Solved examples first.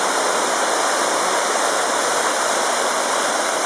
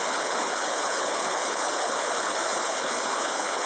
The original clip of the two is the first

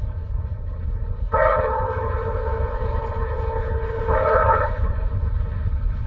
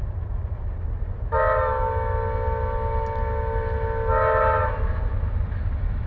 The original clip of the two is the second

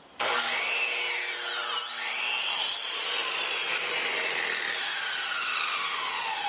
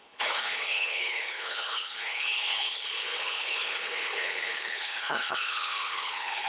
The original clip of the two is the first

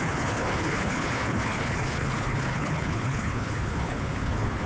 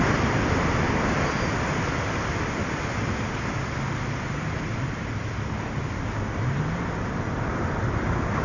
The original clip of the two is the second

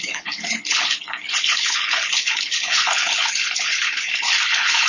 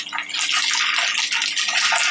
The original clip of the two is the second